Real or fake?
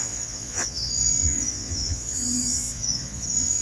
fake